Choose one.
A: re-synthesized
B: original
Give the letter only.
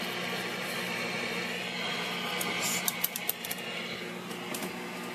B